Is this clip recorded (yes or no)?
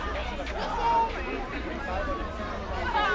yes